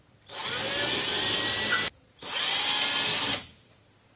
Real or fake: real